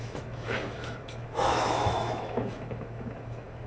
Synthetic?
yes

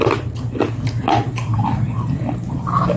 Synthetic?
no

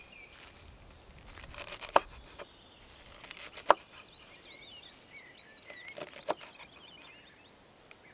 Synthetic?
no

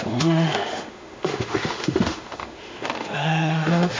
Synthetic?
yes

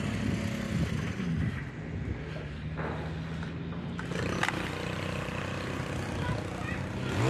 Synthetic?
no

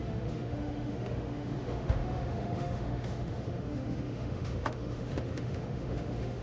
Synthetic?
yes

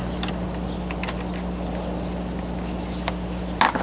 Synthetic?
no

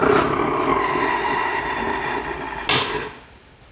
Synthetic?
no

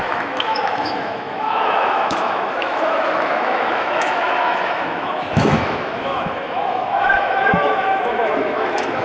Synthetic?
yes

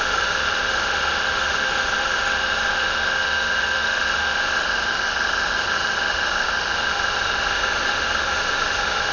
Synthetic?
yes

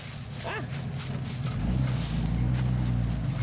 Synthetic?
no